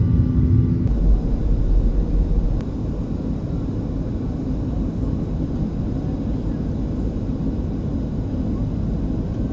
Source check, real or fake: real